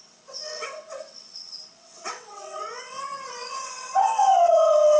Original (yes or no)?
no